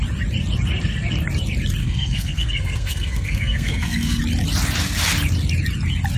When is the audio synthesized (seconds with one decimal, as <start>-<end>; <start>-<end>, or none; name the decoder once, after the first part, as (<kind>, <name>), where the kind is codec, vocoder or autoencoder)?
1.8-4.2 (codec, SNAC)